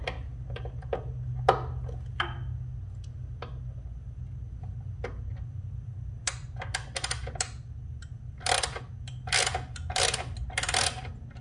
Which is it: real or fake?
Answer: real